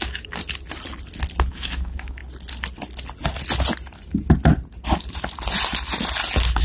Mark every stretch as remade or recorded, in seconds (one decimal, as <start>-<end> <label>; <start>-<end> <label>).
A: 0.0-0.4 remade; 0.4-1.5 recorded; 1.5-2.2 remade; 2.2-6.6 recorded